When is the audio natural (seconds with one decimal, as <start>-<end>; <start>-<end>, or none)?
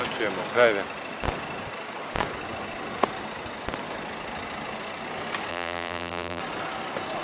0.0-5.5; 6.4-7.2